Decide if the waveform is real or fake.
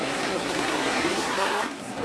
fake